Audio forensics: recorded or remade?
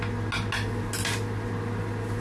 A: recorded